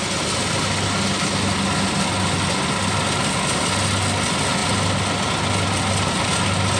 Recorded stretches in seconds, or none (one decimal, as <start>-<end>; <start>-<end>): 0.0-6.8